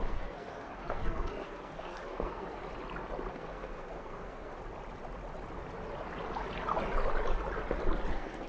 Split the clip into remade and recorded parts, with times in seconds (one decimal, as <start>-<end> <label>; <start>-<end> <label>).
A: 0.0-2.6 remade; 2.6-3.3 recorded; 3.3-4.6 remade; 4.6-8.1 recorded; 8.1-8.5 remade